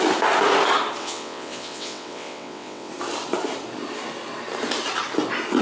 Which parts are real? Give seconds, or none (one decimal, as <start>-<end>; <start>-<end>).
0.0-1.0; 2.9-5.6